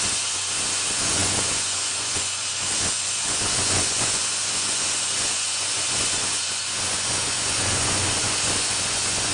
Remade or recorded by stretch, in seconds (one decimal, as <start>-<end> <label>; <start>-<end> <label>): 0.0-9.3 remade